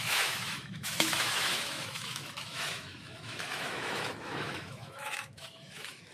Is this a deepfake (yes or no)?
yes